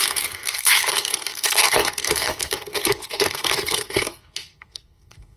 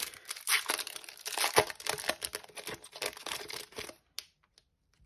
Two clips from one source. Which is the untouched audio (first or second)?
second